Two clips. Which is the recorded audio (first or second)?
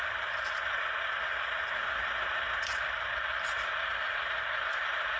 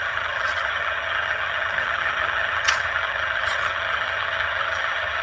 first